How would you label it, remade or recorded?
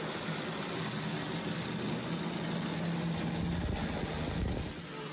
recorded